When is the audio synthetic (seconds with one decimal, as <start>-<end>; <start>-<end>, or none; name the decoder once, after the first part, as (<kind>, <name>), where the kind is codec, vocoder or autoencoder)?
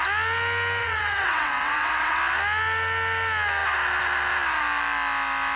0.8-2.2 (vocoder, WaveNeXt)